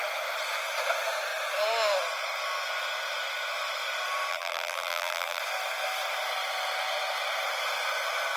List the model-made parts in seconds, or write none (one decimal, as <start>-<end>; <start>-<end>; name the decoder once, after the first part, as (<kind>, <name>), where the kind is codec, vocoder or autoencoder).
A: 4.3-5.4 (vocoder, BigVGAN v2)